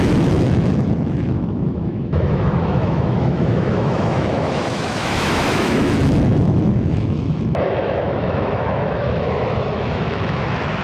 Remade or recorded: remade